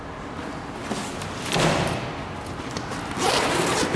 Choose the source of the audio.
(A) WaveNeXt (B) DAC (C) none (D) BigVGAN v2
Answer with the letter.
C